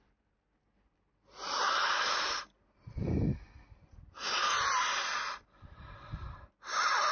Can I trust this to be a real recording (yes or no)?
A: yes